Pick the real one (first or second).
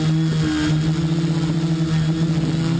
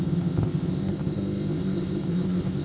first